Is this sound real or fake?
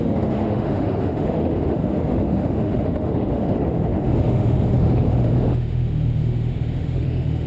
fake